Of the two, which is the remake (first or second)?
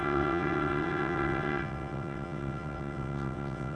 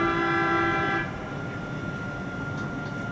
first